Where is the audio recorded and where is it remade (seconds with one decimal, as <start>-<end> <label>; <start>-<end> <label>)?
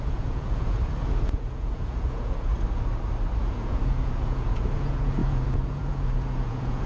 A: 0.0-2.5 remade; 2.5-3.4 recorded; 3.4-6.9 remade